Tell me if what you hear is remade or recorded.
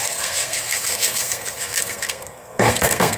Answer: remade